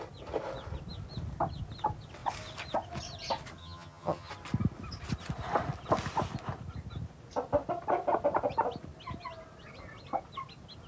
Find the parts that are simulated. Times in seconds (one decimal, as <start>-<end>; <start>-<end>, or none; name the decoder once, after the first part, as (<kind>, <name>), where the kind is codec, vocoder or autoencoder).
3.6-4.3 (vocoder, HiFi-GAN)